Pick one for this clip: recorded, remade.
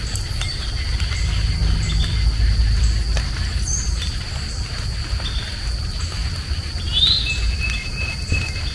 recorded